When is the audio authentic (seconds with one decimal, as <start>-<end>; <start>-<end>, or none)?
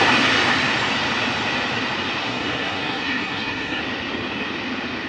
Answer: 0.0-2.2; 3.8-5.1